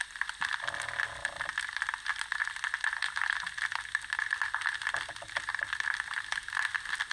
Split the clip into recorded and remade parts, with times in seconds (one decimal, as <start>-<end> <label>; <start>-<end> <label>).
0.0-7.1 recorded